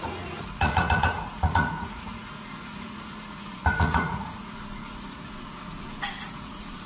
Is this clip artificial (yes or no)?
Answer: yes